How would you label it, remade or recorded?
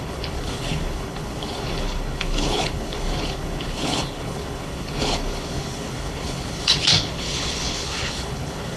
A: remade